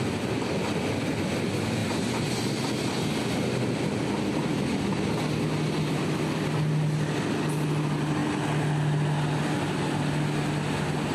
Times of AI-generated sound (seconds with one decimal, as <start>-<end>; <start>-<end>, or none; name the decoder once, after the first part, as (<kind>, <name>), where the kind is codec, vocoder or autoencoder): 1.8-3.3 (vocoder, BigVGAN v2)